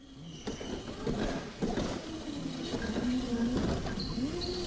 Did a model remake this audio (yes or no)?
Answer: no